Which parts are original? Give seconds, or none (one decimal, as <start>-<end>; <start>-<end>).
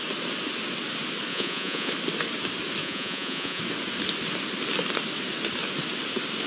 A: 0.0-1.3; 1.9-2.8; 3.6-6.5